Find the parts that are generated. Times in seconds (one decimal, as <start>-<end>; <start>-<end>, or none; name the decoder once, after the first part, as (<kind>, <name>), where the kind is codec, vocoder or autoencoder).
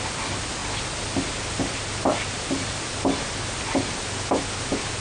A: none